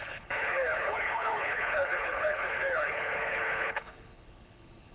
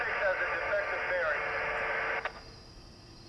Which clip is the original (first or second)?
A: second